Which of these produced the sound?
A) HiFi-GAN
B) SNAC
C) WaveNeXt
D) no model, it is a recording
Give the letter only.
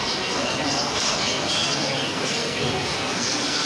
B